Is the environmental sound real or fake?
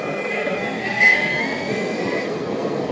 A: fake